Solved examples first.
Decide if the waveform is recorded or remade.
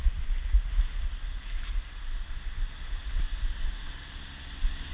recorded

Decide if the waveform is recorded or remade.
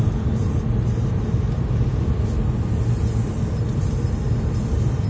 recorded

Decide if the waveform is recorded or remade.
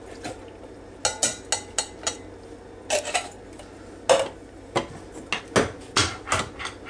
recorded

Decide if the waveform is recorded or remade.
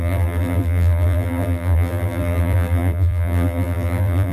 remade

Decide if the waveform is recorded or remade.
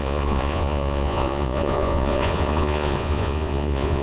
remade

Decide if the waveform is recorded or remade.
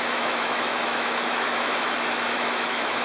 remade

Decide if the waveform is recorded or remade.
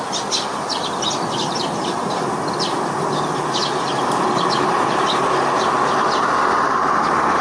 recorded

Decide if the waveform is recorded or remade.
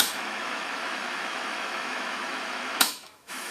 remade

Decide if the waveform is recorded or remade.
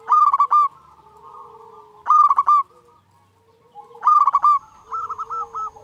recorded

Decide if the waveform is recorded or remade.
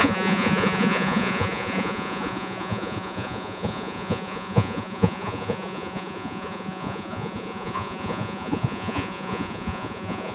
remade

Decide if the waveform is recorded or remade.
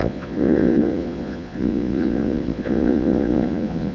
remade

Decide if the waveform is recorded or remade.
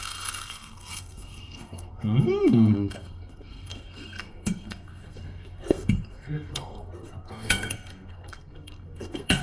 remade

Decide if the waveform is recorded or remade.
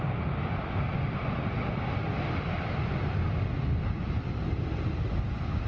recorded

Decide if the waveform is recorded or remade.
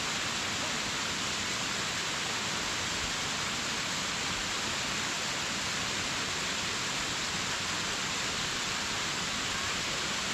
recorded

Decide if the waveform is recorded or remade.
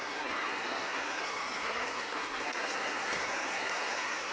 remade